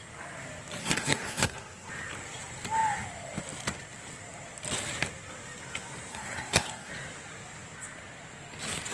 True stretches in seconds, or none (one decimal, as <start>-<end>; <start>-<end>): 0.0-0.8; 1.9-6.1; 6.9-8.9